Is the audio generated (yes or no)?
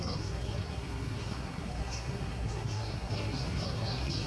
yes